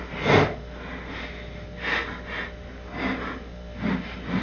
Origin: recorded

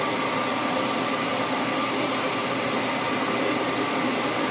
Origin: recorded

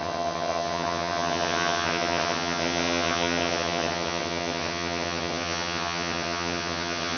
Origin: remade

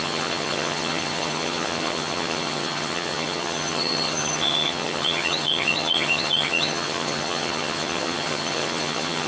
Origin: remade